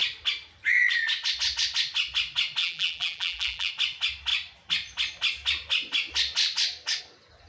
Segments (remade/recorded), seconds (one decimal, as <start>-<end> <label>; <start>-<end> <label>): 0.0-2.6 recorded; 2.6-3.7 remade; 3.7-7.5 recorded